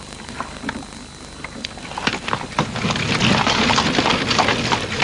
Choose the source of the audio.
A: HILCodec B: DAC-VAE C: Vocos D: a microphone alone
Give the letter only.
D